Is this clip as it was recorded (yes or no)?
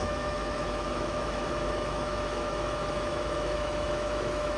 no